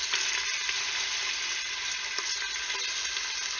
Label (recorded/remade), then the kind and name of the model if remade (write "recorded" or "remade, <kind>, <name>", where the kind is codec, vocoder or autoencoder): recorded